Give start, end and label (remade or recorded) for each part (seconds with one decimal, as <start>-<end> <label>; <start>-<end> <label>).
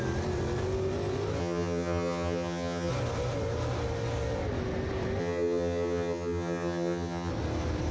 0.0-1.4 recorded; 1.4-2.9 remade; 2.9-5.2 recorded; 5.2-7.3 remade; 7.3-7.9 recorded